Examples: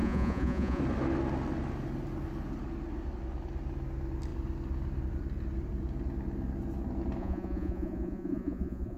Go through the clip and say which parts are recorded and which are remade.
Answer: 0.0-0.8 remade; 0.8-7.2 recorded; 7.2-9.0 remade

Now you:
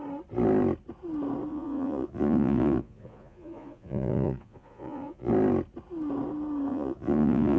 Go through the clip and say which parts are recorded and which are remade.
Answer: 0.0-1.5 recorded; 1.5-5.3 remade; 5.3-6.7 recorded; 6.7-7.6 remade

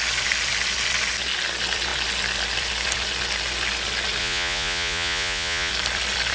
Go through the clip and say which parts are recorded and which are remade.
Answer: 0.0-4.2 recorded; 4.2-5.7 remade; 5.7-6.3 recorded

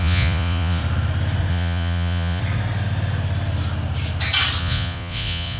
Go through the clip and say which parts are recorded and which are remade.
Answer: 0.0-0.8 remade; 0.8-1.5 recorded; 1.5-2.4 remade; 2.4-4.6 recorded; 4.6-5.6 remade

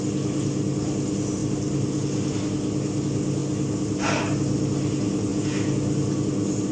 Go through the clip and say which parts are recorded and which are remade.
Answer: 0.0-6.7 recorded

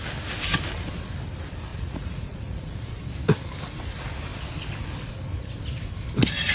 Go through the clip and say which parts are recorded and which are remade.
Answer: 0.0-1.7 recorded; 1.7-3.0 remade; 3.0-6.5 recorded

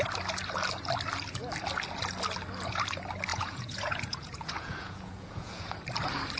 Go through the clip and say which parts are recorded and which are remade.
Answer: 0.0-3.3 recorded; 3.3-5.7 remade; 5.7-6.4 recorded